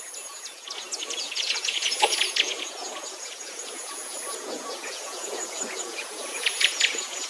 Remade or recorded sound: remade